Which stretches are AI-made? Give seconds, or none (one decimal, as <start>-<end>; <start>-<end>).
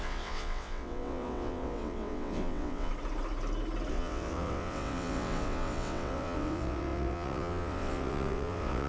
0.0-2.9; 3.9-8.9